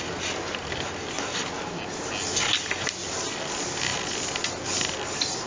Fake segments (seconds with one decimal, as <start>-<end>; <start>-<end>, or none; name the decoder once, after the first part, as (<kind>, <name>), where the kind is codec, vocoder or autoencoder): none